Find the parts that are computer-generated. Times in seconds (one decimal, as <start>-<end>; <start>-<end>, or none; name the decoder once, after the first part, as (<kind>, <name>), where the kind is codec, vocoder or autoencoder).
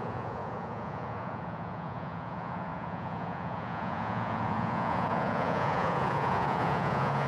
0.0-7.3 (vocoder, Vocos)